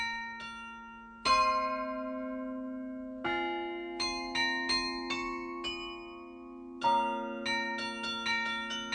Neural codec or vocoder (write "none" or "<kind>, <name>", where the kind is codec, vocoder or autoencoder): none